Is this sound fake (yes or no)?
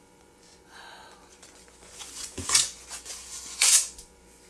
yes